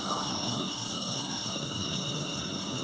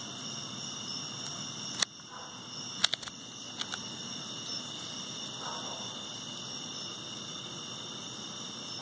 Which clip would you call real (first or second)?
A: second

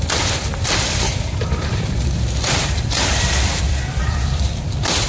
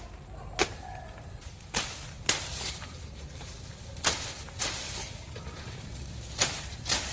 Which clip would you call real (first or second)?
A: second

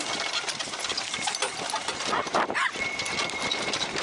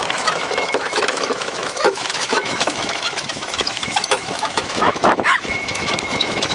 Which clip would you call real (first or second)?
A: first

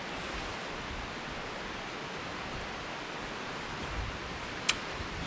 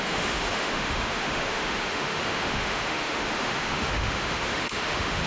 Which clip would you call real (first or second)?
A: first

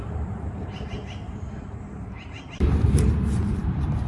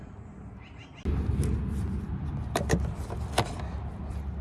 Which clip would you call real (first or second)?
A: second